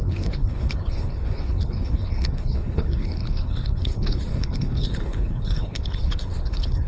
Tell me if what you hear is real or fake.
fake